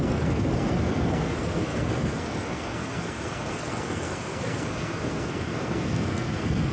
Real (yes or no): no